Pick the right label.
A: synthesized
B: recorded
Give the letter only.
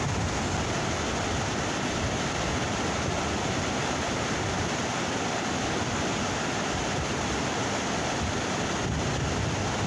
B